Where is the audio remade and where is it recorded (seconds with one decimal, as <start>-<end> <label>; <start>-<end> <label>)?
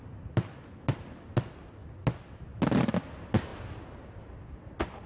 0.0-5.1 recorded